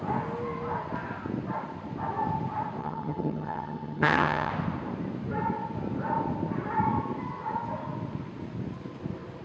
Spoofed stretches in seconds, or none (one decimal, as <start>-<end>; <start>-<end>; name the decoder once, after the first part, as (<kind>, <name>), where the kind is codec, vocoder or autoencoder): 2.8-4.5 (vocoder, HiFi-GAN)